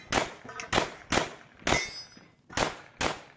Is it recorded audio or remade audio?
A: recorded